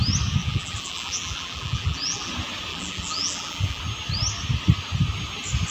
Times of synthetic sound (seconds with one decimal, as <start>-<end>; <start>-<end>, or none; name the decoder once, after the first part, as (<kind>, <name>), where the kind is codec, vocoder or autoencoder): 0.4-2.3 (vocoder, BigVGAN v2); 2.7-3.8